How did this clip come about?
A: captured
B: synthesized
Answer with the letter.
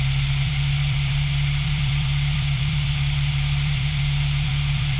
B